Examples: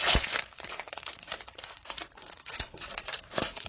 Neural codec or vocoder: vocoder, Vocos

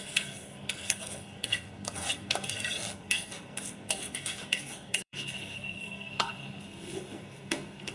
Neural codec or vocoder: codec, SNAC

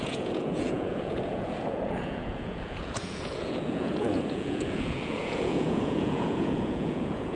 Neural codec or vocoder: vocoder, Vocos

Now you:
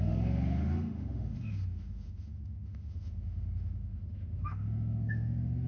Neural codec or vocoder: autoencoder, DAC-VAE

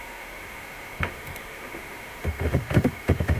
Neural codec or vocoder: autoencoder, DAC-VAE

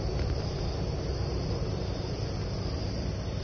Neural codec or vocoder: none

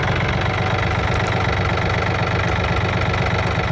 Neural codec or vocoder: none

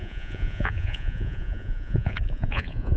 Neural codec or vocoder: vocoder, Vocos